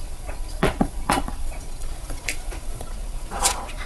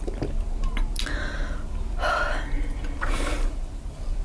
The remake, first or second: first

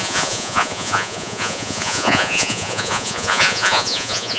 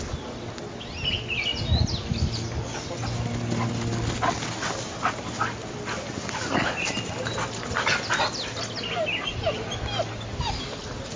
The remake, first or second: first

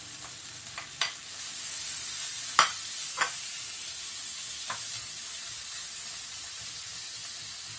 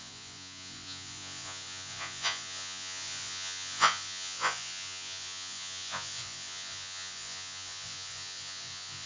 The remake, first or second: second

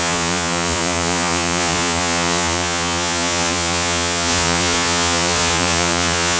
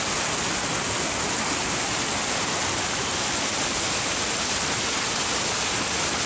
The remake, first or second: first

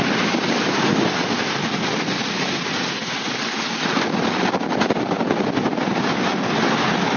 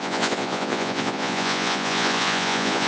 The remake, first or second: second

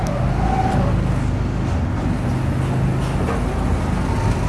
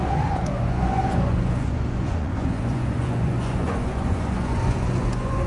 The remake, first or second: second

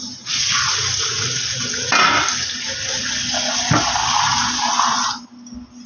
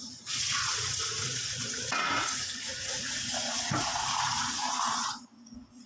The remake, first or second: second